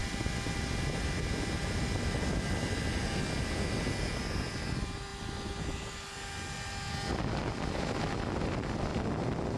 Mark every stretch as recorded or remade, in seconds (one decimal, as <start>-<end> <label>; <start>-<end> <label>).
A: 0.0-9.6 recorded